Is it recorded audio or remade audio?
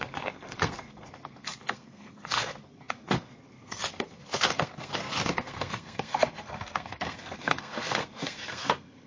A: remade